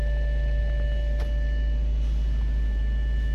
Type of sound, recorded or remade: recorded